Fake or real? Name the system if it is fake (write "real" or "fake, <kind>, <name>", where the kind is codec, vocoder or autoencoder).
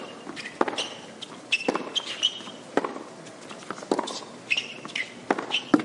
real